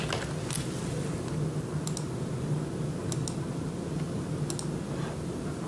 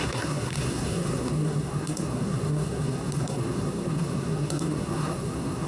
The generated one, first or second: second